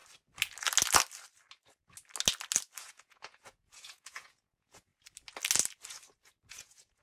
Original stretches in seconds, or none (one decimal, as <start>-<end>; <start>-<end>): 0.0-2.8; 4.9-6.5